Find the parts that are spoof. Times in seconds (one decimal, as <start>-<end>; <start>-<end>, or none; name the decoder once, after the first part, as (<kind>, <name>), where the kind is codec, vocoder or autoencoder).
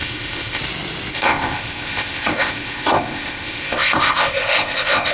0.0-0.6 (codec, ZipCodec); 1.1-5.1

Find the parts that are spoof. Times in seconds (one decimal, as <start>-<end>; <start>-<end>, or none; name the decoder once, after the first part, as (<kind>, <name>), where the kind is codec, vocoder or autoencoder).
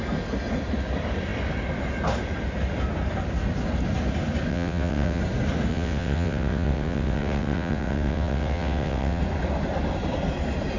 4.5-5.2 (vocoder, WaveNeXt); 5.7-9.2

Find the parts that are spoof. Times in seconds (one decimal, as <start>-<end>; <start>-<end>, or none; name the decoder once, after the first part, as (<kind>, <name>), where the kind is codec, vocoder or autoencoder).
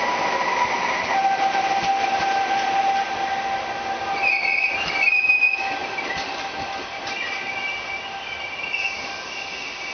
none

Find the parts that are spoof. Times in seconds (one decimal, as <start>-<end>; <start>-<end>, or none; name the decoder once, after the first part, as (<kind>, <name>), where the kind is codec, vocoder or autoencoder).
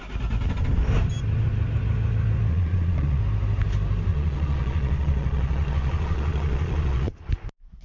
2.5-3.2 (vocoder, Vocos); 4.1-7.3